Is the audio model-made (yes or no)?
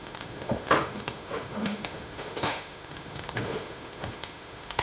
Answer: yes